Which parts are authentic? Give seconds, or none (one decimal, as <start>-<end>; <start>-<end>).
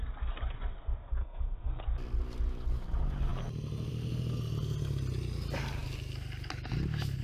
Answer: 0.0-1.2; 1.8-7.2